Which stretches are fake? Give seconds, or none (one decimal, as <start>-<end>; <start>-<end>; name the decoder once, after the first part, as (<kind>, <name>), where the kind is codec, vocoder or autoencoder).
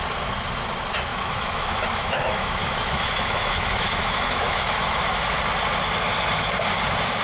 1.1-5.4 (autoencoder, DAC-VAE)